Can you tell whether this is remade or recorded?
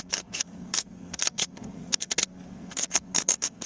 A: remade